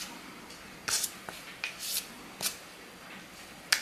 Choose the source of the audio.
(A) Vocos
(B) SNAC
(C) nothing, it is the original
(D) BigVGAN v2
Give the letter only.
C